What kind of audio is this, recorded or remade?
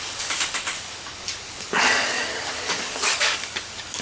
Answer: remade